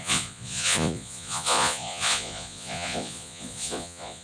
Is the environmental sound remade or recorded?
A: remade